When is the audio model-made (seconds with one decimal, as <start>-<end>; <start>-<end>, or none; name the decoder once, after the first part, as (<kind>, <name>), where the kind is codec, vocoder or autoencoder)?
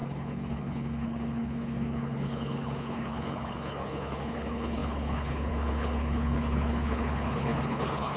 0.0-8.2 (codec, HILCodec)